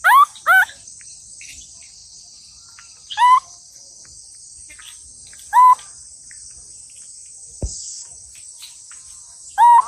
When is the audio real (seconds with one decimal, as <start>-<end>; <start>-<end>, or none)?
0.0-9.9